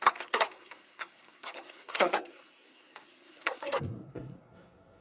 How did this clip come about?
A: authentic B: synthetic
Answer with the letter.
B